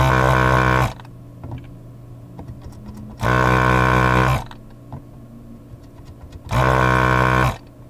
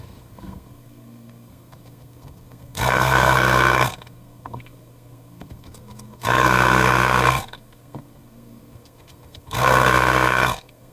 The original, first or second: first